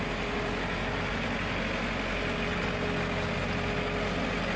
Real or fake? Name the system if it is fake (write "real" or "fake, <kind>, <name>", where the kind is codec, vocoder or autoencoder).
real